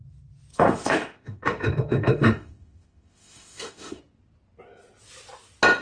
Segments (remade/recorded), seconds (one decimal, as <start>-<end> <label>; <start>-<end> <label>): 0.0-0.5 recorded; 0.5-4.0 remade; 4.0-5.8 recorded